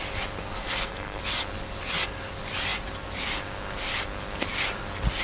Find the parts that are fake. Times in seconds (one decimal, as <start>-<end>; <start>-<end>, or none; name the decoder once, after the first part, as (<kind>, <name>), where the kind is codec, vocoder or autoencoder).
0.6-1.2 (codec, SNAC)